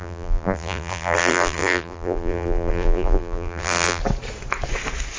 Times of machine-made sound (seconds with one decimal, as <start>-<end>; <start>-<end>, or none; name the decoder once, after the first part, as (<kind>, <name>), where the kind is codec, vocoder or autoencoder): 0.0-4.0 (vocoder, BigVGAN v2)